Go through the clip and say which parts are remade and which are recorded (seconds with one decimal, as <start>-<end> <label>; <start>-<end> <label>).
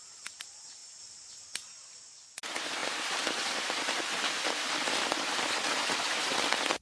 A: 0.0-6.8 recorded